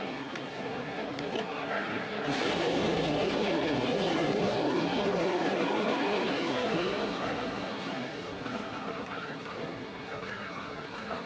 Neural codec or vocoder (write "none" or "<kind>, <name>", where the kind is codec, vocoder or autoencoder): codec, SNAC